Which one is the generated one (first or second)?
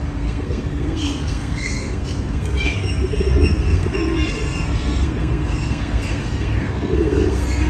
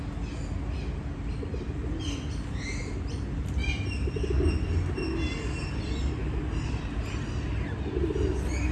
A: first